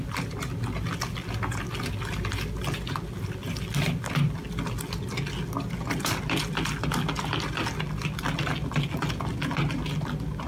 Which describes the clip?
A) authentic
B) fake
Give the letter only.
A